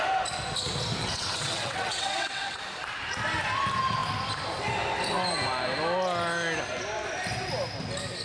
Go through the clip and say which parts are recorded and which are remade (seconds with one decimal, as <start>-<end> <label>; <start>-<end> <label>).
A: 0.0-1.0 recorded; 1.0-2.6 remade; 2.6-8.2 recorded